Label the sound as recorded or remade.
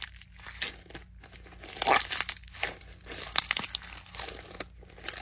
recorded